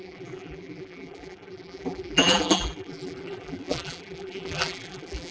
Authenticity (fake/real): fake